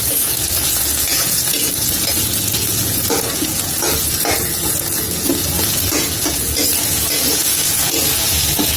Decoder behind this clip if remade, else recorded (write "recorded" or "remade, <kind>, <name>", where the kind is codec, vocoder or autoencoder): remade, vocoder, Vocos